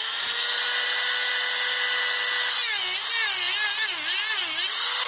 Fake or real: real